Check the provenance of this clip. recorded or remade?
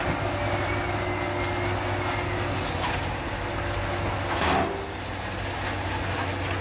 recorded